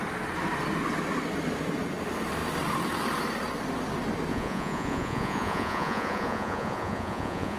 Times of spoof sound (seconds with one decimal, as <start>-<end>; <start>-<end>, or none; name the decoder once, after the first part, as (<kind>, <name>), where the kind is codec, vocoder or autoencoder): 4.3-7.6 (vocoder, Vocos)